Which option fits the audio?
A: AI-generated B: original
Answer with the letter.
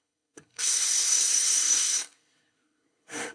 A